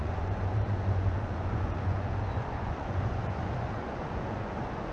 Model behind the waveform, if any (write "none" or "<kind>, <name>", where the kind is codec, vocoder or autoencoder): vocoder, Vocos